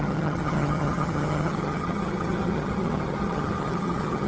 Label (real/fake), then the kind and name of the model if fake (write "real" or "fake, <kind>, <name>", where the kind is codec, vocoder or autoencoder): fake, vocoder, HiFi-GAN